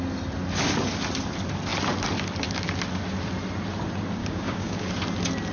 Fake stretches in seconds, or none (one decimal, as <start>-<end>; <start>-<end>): 4.2-4.9